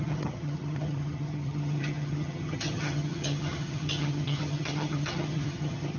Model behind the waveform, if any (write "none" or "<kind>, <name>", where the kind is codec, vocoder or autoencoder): vocoder, HiFi-GAN